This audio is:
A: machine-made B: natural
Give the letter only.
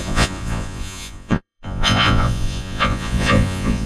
A